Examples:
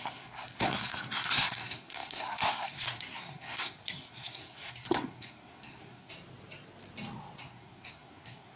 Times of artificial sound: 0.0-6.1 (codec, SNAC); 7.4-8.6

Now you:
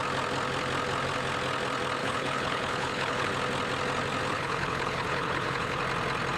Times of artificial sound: 2.0-3.3 (codec, HILCodec); 4.3-5.8

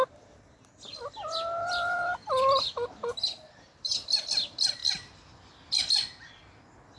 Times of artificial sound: none

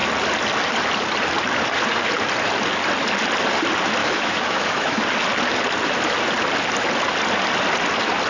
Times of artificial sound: 4.0-5.0 (autoencoder, DAC-VAE)